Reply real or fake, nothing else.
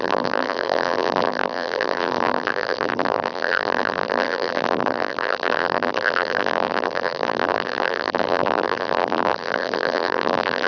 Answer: fake